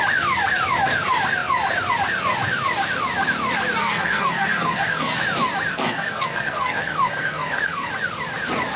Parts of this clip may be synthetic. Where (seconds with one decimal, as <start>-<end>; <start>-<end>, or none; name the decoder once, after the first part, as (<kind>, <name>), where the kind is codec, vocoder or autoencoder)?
3.8-5.2 (codec, SNAC); 5.7-7.9